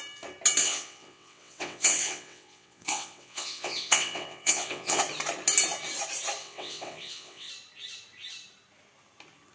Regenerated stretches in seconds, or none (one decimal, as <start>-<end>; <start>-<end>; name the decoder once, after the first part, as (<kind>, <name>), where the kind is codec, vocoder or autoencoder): 0.6-5.0 (vocoder, WaveNeXt); 6.4-7.5